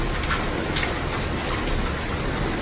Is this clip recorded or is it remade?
recorded